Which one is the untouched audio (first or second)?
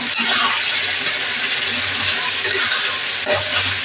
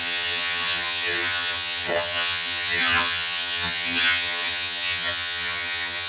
first